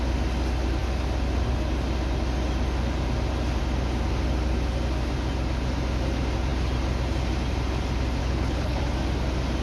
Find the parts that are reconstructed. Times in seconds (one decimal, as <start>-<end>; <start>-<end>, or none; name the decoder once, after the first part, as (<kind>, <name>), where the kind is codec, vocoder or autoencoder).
8.2-8.8 (codec, HILCodec)